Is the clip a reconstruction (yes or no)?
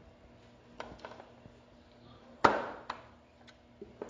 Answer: no